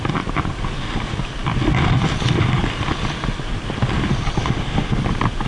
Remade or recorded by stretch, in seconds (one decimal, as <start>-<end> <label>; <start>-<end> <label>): 0.0-4.4 recorded; 4.4-5.0 remade; 5.0-5.5 recorded